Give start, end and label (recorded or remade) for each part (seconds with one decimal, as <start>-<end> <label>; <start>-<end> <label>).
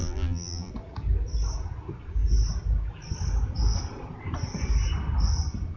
0.0-0.7 remade; 0.7-5.8 recorded